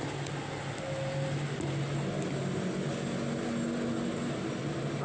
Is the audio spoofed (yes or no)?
no